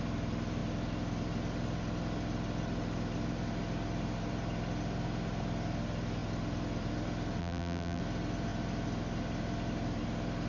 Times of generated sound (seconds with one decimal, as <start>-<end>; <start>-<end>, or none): 7.4-8.0